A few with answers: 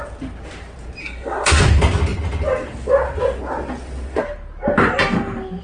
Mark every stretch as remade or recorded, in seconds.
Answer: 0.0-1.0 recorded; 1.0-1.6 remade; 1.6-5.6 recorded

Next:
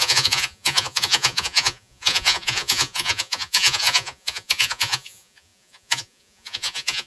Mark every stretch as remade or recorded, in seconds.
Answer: 0.0-7.1 remade

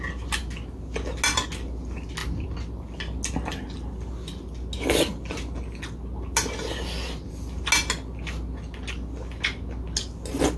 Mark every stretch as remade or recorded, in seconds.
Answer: 0.0-10.6 recorded

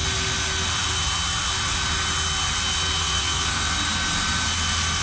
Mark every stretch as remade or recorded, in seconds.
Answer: 0.0-3.0 recorded; 3.0-3.8 remade; 3.8-5.0 recorded

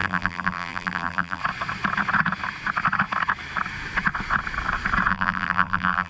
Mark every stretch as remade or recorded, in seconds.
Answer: 0.0-1.4 remade; 1.4-5.1 recorded; 5.1-6.1 remade

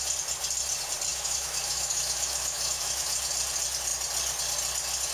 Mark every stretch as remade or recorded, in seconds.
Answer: 0.0-1.1 recorded; 1.1-3.3 remade; 3.3-5.1 recorded

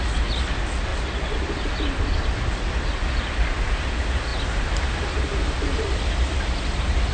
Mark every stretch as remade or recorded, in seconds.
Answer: 0.0-7.1 recorded

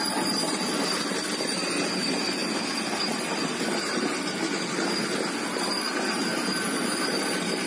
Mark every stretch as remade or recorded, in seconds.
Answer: 0.0-7.7 recorded